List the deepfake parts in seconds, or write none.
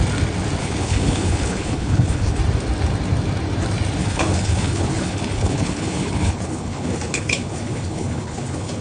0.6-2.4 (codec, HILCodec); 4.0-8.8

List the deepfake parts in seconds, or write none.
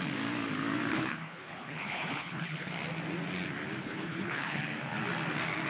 0.9-2.7 (codec, HILCodec); 3.8-4.6